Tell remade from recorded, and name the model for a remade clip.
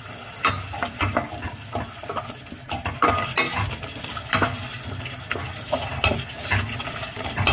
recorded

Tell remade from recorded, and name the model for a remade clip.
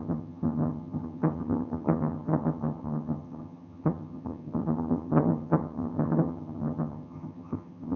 remade, vocoder, HiFi-GAN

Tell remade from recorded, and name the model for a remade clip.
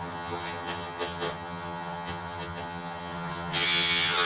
remade, vocoder, HiFi-GAN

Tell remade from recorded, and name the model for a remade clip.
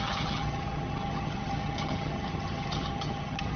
remade, vocoder, HiFi-GAN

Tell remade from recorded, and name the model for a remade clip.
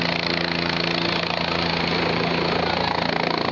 recorded